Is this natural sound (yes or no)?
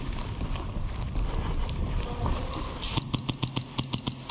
yes